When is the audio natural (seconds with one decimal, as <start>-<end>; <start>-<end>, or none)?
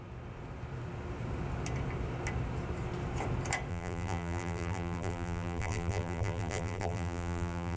0.0-3.7